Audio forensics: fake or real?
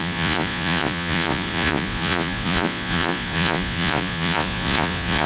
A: fake